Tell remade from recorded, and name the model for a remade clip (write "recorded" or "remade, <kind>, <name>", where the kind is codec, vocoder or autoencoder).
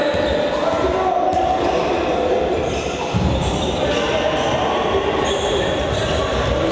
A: recorded